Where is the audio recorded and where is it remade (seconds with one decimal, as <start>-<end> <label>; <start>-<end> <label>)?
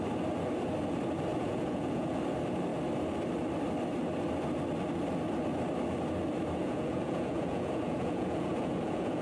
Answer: 0.0-1.3 recorded; 1.3-2.2 remade; 2.2-6.6 recorded; 6.6-9.2 remade